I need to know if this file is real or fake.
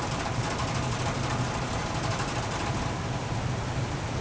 real